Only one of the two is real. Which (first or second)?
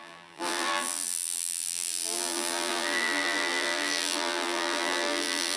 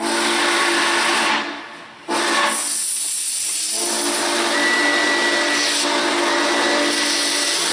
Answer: second